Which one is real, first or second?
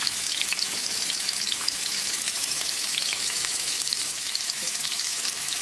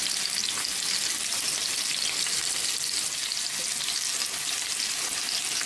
second